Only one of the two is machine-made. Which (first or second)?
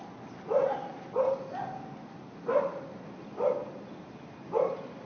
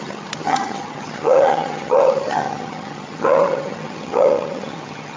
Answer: second